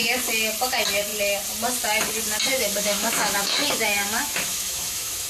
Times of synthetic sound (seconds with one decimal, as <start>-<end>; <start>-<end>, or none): 2.5-5.3